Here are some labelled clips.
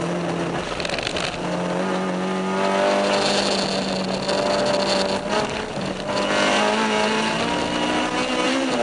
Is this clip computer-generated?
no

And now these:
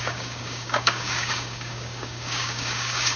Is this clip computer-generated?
yes